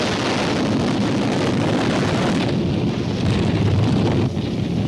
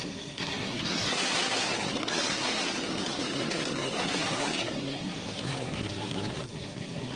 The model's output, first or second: second